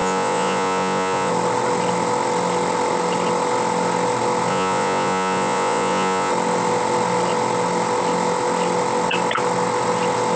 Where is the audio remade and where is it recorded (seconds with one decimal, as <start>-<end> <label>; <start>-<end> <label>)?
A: 0.0-1.3 remade; 1.3-4.5 recorded; 4.5-6.3 remade; 6.3-10.4 recorded